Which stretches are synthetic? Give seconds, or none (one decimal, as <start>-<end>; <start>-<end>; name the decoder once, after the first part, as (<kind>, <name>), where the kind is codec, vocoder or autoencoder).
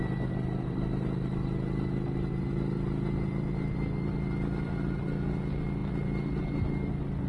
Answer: none